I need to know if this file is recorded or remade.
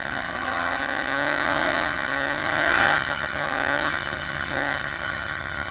remade